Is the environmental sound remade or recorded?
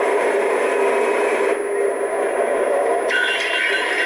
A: recorded